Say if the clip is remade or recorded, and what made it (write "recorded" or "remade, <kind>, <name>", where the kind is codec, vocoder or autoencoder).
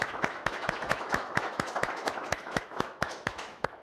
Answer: remade, autoencoder, DAC-VAE